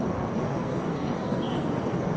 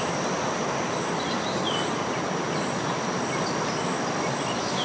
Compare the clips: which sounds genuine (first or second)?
second